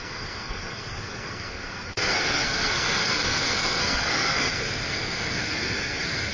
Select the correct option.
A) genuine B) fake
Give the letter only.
B